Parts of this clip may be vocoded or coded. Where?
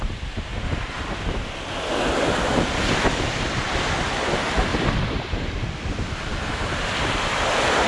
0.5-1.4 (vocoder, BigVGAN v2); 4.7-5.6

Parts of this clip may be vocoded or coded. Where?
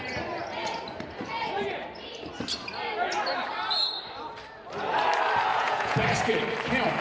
5.5-6.2 (vocoder, Vocos)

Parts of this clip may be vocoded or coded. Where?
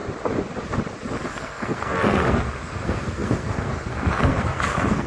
1.3-5.1 (codec, SNAC)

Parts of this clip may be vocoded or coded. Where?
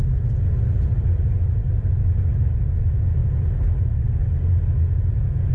none